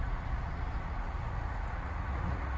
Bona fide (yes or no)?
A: no